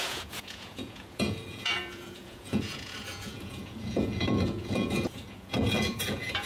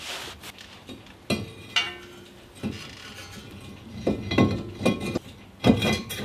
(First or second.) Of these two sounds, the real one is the second